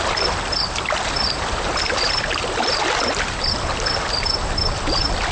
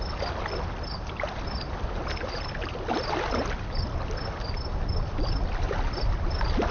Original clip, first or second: second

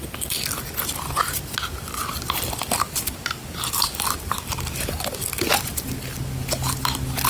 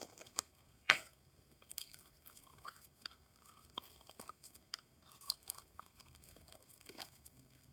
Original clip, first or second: first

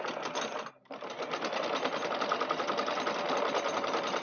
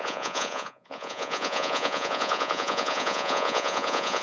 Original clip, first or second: first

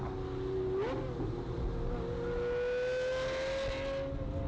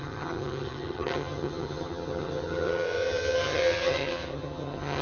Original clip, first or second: first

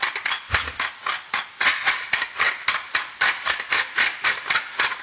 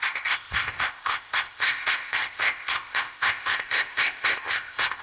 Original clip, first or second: first